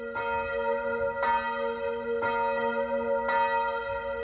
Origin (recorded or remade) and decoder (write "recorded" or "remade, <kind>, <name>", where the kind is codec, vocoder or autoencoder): recorded